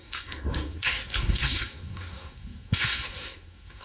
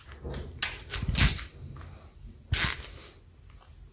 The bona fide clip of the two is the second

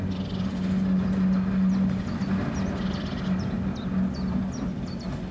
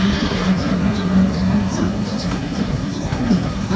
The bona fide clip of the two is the first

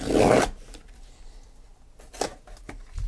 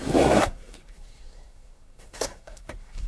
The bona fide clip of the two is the first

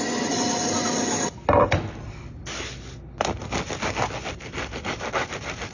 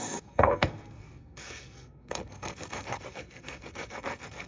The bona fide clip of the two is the first